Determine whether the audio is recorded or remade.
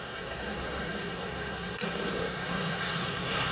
remade